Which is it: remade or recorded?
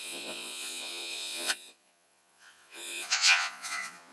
remade